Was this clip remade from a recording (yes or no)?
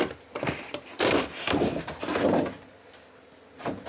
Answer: no